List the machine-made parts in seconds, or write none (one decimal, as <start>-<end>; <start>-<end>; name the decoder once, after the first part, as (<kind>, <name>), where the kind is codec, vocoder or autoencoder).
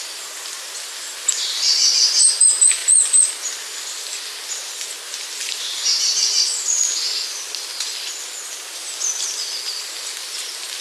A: none